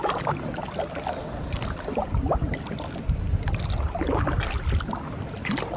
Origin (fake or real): real